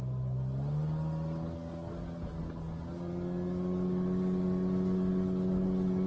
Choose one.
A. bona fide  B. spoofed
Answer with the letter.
A